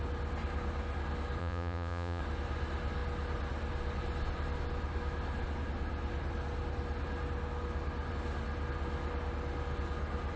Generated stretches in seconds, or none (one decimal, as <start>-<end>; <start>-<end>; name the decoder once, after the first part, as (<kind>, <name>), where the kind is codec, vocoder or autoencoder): 1.4-2.2 (vocoder, Vocos)